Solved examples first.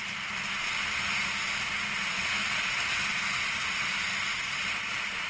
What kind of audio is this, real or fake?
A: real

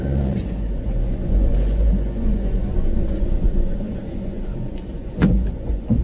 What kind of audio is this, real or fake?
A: fake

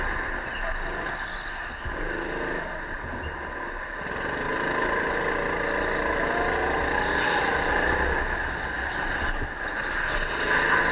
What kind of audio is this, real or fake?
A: real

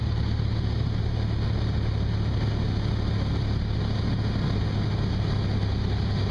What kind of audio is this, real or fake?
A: real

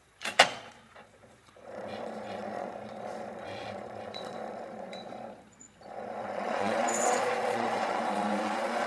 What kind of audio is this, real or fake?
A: fake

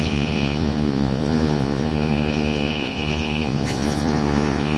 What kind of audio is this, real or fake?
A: fake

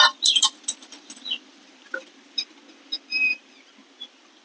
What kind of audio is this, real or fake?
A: real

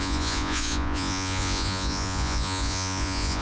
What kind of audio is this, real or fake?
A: fake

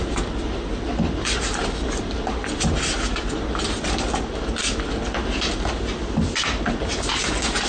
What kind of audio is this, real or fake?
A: real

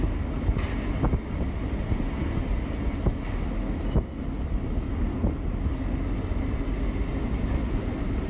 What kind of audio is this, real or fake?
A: real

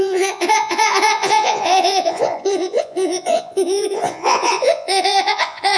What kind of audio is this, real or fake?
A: fake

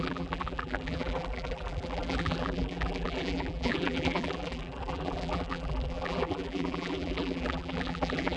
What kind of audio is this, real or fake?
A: fake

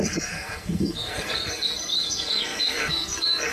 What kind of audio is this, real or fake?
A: fake